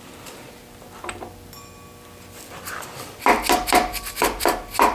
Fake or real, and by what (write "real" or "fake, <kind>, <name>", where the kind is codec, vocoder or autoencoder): fake, vocoder, BigVGAN v2